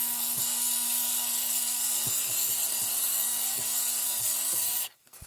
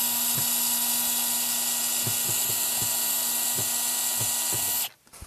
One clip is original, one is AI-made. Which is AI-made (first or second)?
first